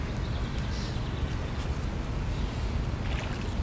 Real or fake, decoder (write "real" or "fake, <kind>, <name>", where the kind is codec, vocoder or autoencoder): real